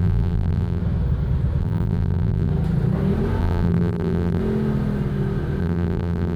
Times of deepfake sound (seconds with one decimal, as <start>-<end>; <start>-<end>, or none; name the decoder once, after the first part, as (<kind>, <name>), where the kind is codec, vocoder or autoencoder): 0.0-0.8 (vocoder, BigVGAN v2); 1.6-2.5; 3.4-4.4; 5.6-6.4